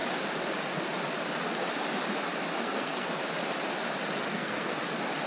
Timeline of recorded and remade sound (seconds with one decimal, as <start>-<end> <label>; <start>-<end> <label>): 0.0-2.5 recorded; 2.5-3.2 remade; 3.2-4.2 recorded; 4.2-4.8 remade; 4.8-5.3 recorded